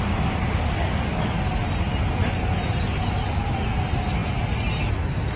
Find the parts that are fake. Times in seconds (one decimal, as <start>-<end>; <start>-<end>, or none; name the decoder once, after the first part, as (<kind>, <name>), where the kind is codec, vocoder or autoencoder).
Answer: none